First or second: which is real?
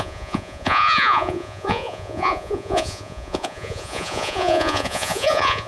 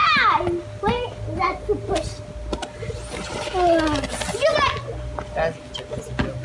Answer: second